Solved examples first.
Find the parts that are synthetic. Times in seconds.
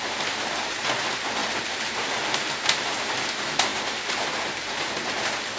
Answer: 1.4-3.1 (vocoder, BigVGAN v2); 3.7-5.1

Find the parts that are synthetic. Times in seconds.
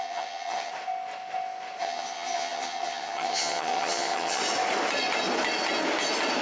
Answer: 0.0-0.7 (vocoder, HiFi-GAN); 1.8-4.4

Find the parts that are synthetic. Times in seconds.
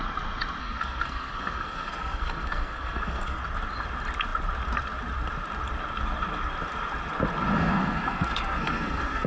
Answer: 0.6-3.4 (codec, SNAC); 7.6-9.3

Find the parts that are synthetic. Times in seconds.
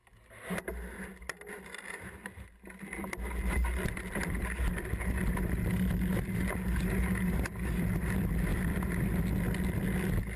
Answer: none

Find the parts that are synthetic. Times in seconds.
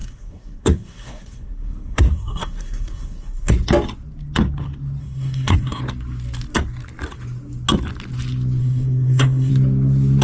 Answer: 0.0-3.5 (codec, SNAC); 5.0-5.8; 8.6-9.5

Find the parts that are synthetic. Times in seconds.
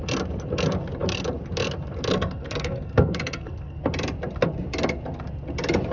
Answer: 2.1-3.8 (codec, SNAC)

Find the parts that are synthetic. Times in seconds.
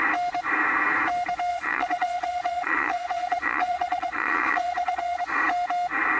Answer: 1.5-5.2 (vocoder, Vocos)